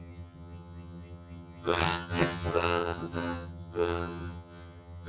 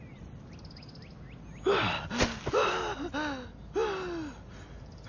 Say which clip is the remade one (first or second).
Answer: first